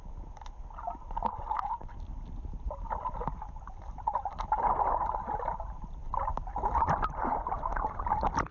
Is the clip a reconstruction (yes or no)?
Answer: no